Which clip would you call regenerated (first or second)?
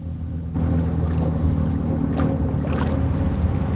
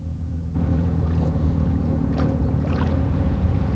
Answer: second